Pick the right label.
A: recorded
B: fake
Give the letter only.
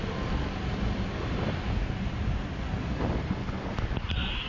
A